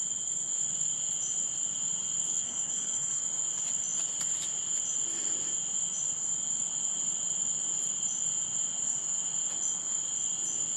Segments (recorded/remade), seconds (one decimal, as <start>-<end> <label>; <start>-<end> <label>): 0.0-2.3 recorded; 2.3-3.2 remade; 3.2-10.8 recorded

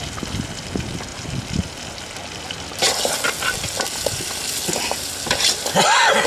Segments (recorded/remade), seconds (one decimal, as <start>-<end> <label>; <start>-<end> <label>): 0.0-6.3 recorded

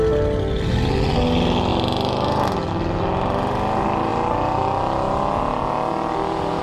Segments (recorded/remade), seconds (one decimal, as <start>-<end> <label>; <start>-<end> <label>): 0.0-6.6 recorded

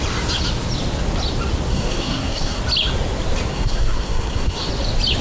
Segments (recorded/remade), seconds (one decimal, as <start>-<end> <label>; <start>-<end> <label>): 0.0-1.7 recorded; 1.7-2.6 remade; 2.6-3.5 recorded; 3.5-4.7 remade; 4.7-5.2 recorded